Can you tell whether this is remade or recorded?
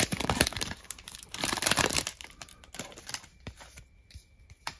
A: remade